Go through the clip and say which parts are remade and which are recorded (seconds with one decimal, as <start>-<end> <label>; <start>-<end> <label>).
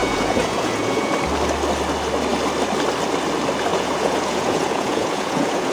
0.0-1.1 remade; 1.1-3.7 recorded; 3.7-5.7 remade